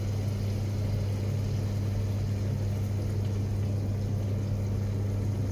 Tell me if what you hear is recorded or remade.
recorded